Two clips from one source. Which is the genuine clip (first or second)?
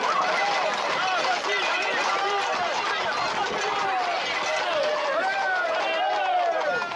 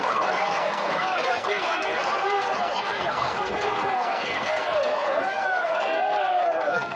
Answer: first